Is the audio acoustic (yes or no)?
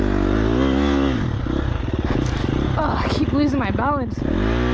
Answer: yes